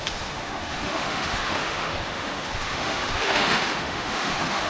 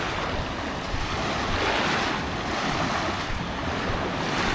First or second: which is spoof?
first